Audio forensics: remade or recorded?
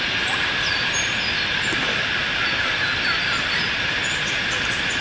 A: recorded